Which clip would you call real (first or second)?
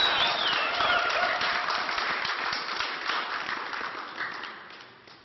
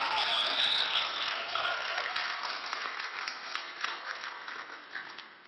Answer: first